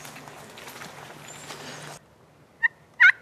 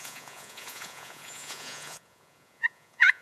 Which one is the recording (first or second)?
first